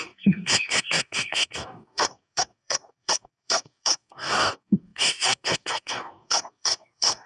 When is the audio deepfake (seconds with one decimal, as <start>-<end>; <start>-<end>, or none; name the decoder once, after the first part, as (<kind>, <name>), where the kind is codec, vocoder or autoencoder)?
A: 0.0-7.3 (codec, DAC)